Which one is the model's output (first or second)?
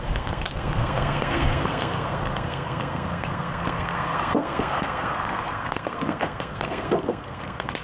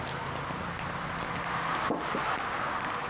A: first